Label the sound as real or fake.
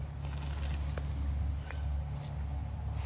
real